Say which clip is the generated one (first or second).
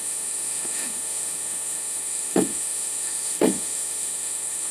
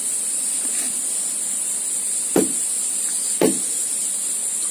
first